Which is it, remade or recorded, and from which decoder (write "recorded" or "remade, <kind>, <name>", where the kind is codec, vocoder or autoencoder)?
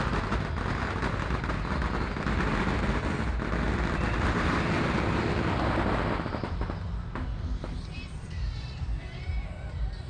recorded